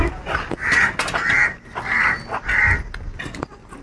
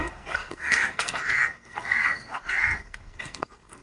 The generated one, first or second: second